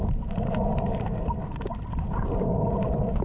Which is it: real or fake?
fake